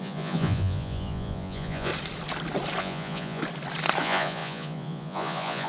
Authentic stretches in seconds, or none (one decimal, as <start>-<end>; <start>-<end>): 1.9-2.8; 3.4-4.0